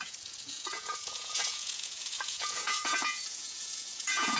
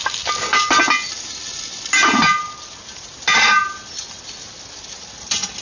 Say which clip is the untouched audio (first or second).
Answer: second